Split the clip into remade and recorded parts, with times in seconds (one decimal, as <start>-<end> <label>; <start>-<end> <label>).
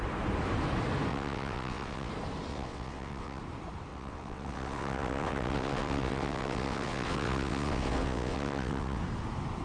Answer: 0.0-1.1 recorded; 1.1-2.1 remade; 2.1-2.5 recorded; 2.5-3.4 remade; 3.4-3.9 recorded; 3.9-9.0 remade; 9.0-9.6 recorded